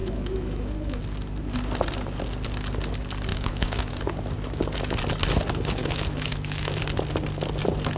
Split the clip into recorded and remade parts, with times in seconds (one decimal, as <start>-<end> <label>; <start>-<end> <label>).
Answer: 0.0-1.0 remade; 1.0-3.3 recorded; 3.3-3.9 remade; 3.9-5.8 recorded; 5.8-6.8 remade; 6.8-8.0 recorded